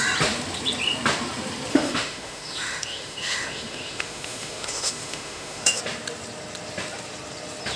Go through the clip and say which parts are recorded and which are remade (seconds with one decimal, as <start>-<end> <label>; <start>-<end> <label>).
0.0-1.7 recorded; 1.7-5.8 remade; 5.8-7.8 recorded